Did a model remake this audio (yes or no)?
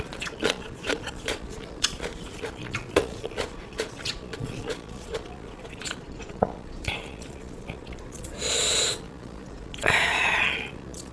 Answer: yes